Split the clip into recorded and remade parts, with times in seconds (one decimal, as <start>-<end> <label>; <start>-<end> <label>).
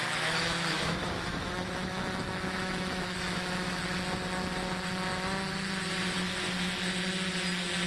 0.0-3.8 remade; 3.8-7.9 recorded